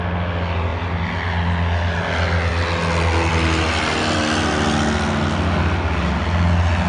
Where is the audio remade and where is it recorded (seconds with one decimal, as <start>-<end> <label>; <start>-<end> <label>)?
0.0-6.9 recorded